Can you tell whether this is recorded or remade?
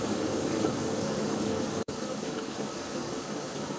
remade